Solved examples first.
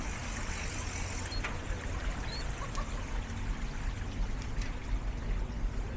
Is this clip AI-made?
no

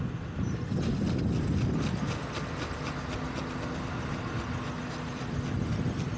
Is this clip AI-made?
no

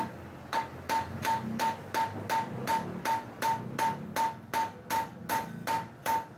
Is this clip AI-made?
no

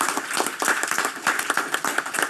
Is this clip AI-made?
no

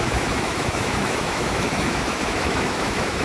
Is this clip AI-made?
yes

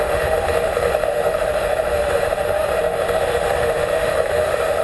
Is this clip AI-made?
yes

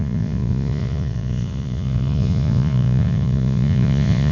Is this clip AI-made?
yes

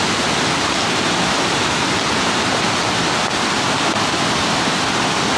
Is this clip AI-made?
no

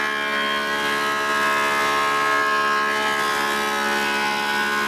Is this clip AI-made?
no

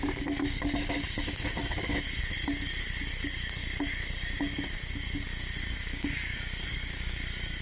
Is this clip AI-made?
yes